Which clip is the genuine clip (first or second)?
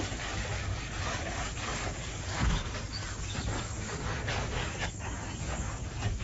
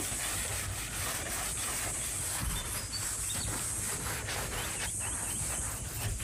second